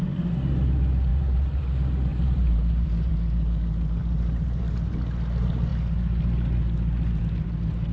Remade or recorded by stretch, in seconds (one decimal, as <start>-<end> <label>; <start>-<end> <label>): 0.0-1.1 recorded; 1.1-1.6 remade; 1.6-2.1 recorded; 2.1-3.1 remade; 3.1-4.0 recorded; 4.0-4.6 remade; 4.6-7.9 recorded